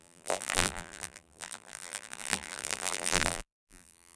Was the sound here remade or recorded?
remade